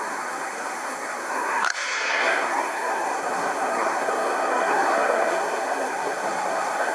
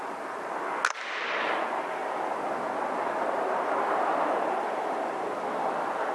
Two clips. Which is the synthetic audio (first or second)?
first